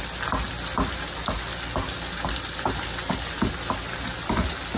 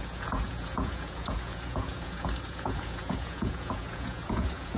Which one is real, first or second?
first